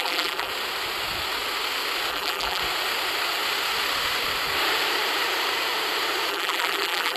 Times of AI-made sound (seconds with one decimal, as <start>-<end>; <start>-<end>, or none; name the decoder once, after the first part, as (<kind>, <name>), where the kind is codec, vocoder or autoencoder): 0.0-0.5 (vocoder, BigVGAN v2); 2.1-2.6; 6.3-7.2